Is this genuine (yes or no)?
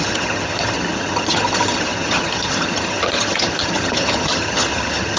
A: no